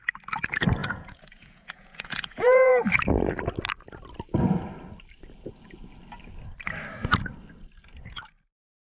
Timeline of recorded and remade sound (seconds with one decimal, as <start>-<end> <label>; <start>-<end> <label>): 0.0-0.8 recorded; 0.8-2.7 remade; 2.7-9.0 recorded